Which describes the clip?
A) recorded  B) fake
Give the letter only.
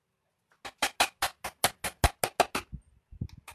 A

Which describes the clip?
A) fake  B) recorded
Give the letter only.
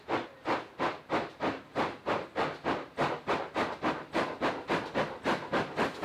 B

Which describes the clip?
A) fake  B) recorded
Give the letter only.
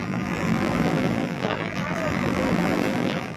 A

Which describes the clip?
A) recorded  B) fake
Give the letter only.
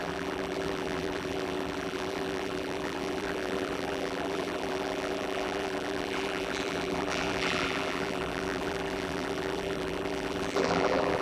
B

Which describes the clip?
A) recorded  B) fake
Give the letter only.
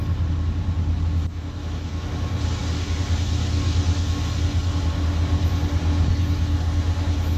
A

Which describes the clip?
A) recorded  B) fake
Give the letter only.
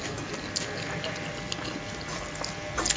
A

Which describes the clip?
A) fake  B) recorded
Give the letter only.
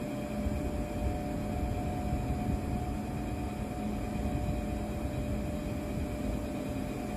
B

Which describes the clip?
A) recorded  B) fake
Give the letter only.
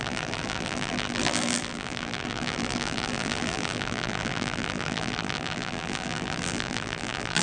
B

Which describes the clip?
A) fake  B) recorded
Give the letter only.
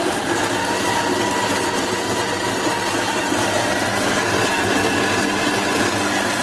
B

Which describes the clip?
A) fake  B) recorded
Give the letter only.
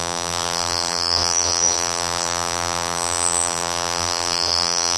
A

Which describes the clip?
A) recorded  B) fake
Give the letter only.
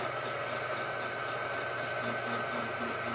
A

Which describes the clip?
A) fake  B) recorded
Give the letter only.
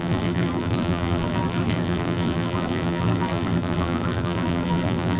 A